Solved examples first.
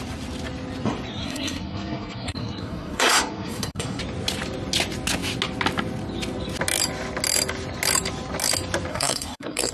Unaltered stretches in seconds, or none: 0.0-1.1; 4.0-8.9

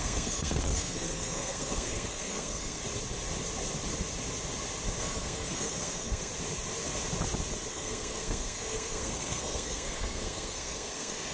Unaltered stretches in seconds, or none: 2.8-5.0; 6.3-7.7

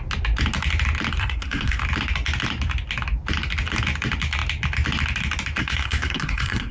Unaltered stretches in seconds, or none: 0.0-1.2; 1.8-5.6

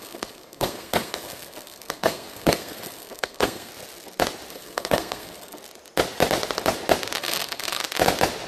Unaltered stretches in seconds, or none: 3.7-4.5; 5.6-7.2; 7.8-8.5

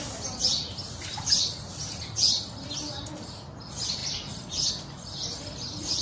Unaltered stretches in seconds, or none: 0.0-6.0

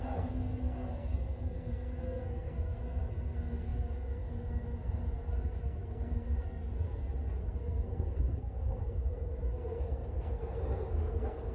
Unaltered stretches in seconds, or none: none